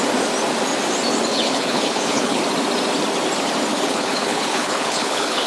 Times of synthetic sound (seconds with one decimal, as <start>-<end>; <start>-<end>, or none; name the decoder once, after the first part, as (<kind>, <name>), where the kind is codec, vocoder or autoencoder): 1.3-2.4 (codec, HILCodec); 3.7-5.5